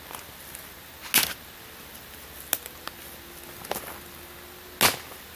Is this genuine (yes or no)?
yes